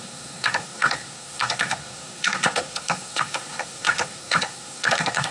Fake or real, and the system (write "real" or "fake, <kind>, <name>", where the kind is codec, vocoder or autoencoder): fake, codec, SNAC